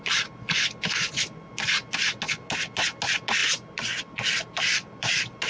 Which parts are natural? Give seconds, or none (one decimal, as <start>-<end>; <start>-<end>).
0.0-5.5

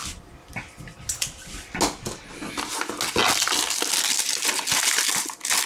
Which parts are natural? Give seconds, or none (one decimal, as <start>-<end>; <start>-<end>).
0.0-5.7

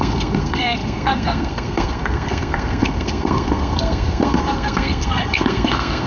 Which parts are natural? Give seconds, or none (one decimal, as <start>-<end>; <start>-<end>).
none

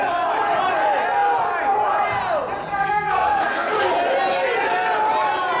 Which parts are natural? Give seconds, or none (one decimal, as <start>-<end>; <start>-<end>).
0.0-2.7; 3.9-5.6

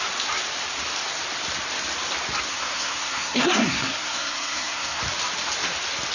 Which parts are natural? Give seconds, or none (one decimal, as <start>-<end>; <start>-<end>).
0.0-2.5; 5.0-6.1